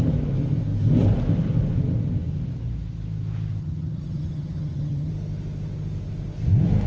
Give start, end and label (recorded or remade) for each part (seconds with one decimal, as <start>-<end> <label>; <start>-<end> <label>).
0.0-3.6 recorded; 3.6-5.1 remade; 5.1-6.9 recorded